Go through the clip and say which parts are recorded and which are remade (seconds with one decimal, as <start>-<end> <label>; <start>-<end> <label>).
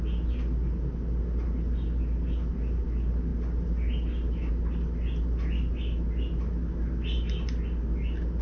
0.0-8.4 recorded